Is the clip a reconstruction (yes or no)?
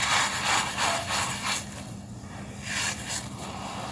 no